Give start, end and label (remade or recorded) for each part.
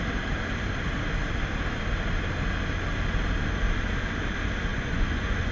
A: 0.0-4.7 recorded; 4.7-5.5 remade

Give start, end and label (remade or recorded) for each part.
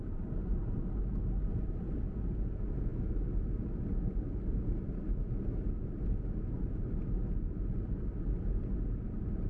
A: 0.0-9.5 recorded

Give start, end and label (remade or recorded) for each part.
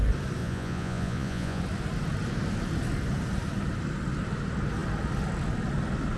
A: 0.0-0.4 recorded; 0.4-1.6 remade; 1.6-6.2 recorded